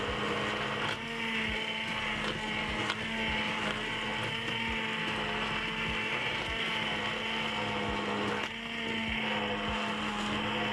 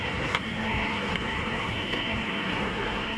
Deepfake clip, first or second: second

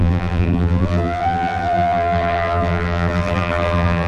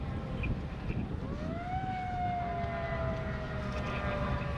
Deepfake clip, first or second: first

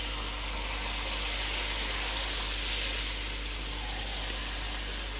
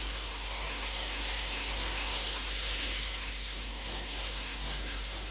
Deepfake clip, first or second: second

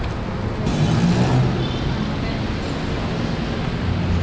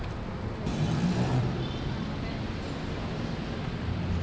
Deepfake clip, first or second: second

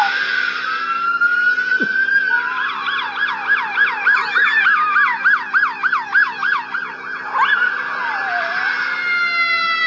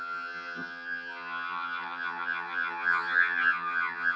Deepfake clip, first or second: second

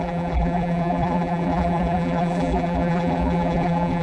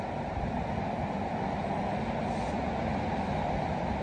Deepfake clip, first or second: first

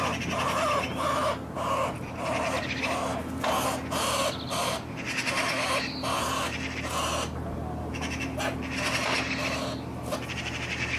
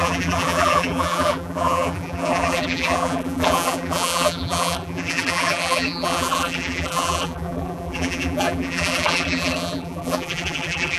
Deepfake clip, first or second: second